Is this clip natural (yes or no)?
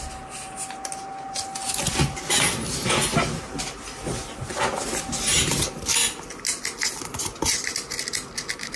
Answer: yes